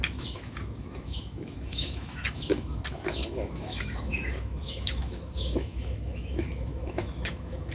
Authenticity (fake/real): fake